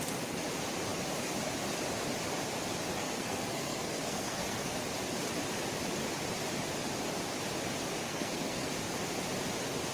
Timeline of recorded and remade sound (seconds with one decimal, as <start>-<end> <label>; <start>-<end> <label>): 0.0-2.9 recorded; 2.9-4.8 remade; 4.8-8.0 recorded; 8.0-8.7 remade; 8.7-9.9 recorded